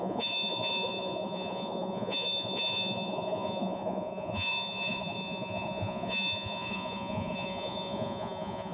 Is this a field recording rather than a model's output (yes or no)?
no